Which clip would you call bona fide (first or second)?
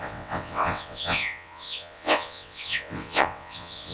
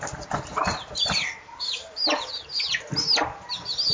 second